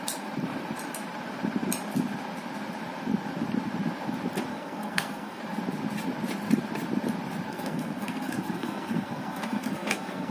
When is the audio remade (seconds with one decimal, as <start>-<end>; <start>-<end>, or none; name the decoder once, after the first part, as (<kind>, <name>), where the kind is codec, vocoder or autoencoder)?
4.5-5.4 (codec, SNAC); 7.5-10.3